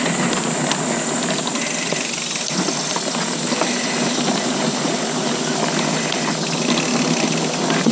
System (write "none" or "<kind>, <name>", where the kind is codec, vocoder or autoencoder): none